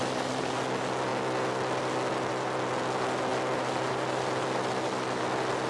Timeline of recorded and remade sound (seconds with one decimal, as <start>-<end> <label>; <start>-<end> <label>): 0.0-5.7 recorded